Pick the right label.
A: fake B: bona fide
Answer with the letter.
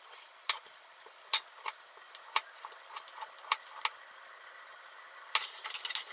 B